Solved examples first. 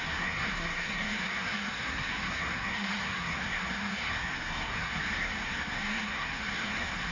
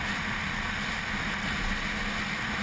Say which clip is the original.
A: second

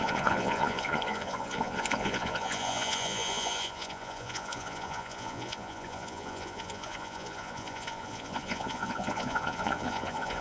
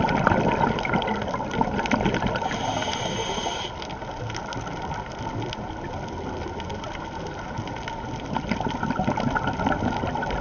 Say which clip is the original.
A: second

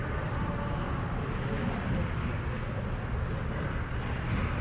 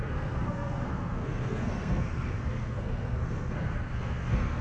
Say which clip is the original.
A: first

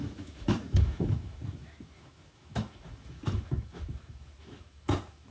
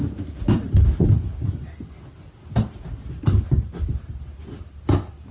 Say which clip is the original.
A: second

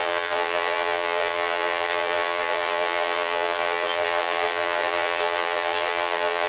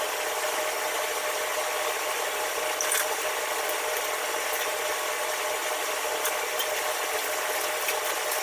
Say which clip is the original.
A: second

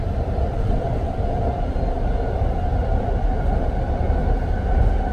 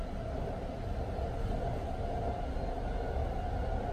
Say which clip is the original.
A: second